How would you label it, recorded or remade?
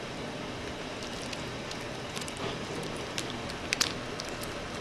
recorded